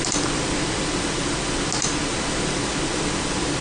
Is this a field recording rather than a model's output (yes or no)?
yes